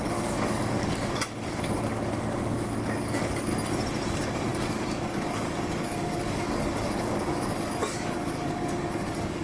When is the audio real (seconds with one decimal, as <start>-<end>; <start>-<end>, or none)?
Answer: 3.5-4.1